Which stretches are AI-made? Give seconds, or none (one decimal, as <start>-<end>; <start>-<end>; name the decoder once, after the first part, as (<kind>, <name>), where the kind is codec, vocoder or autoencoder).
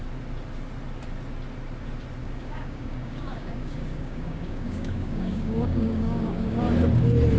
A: 2.2-6.6 (codec, DAC)